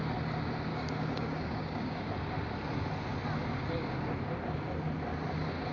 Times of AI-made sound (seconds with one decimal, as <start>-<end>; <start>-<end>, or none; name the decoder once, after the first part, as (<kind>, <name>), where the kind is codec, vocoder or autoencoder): 0.7-2.1 (codec, DAC)